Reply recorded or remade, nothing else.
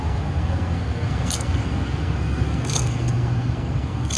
remade